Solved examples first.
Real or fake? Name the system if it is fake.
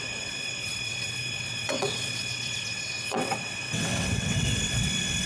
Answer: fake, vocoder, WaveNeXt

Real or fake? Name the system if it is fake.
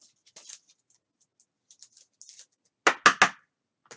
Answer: real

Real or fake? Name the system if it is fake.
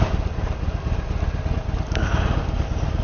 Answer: real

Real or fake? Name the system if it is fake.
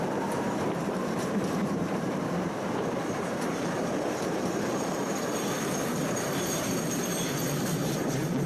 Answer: fake, vocoder, BigVGAN v2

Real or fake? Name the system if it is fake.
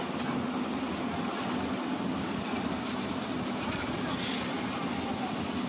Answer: real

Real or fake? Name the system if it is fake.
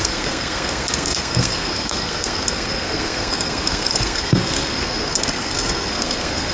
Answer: fake, codec, SNAC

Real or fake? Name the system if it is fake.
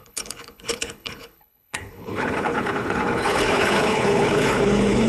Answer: fake, codec, HILCodec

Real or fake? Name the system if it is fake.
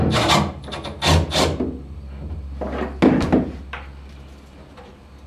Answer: real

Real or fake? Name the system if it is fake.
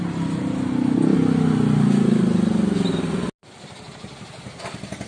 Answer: real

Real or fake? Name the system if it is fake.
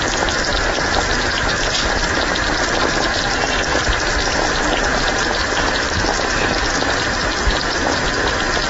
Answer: real